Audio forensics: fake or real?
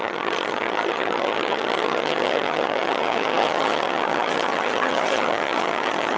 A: fake